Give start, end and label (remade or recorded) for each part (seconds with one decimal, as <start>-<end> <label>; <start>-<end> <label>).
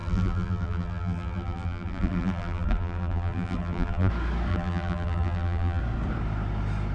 0.0-4.1 remade; 4.1-4.5 recorded; 4.5-5.8 remade; 5.8-6.9 recorded